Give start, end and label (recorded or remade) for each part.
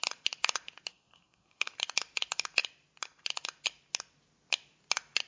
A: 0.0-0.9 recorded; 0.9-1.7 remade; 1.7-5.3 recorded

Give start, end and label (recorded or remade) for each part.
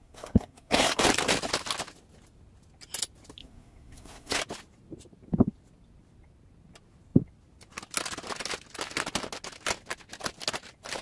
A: 0.0-1.0 remade; 1.0-3.4 recorded; 3.4-4.4 remade; 4.4-11.0 recorded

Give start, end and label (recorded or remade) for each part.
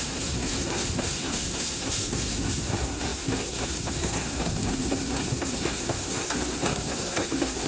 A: 0.0-7.7 remade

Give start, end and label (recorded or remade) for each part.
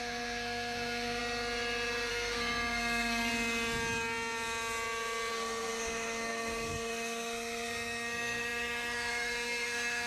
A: 0.0-1.2 remade; 1.2-2.1 recorded; 2.1-3.3 remade; 3.3-5.3 recorded; 5.3-10.1 remade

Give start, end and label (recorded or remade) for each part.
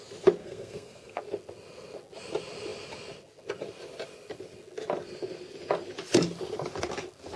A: 0.0-0.4 recorded; 0.4-1.2 remade; 1.2-7.4 recorded